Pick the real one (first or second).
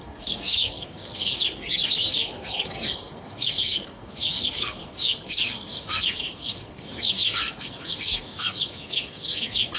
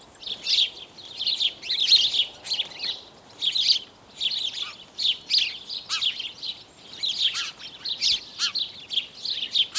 second